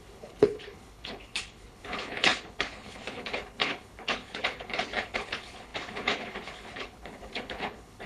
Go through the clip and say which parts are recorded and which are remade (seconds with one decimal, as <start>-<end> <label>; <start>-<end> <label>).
0.0-8.1 remade